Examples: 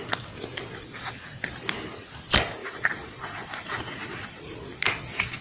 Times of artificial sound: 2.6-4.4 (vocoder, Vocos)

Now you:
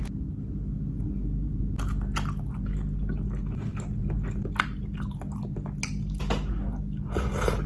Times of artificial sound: none

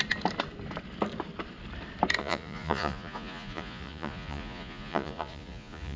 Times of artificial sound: 2.2-6.0 (vocoder, Vocos)

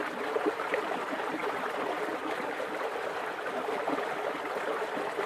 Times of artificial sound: none

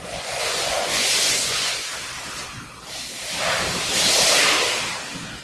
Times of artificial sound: 0.0-1.9 (vocoder, Vocos)

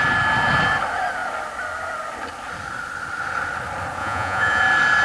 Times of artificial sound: 4.0-4.6 (vocoder, Vocos)

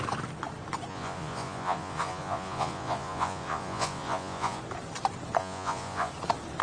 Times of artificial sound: 0.9-4.6 (vocoder, Vocos); 5.4-6.1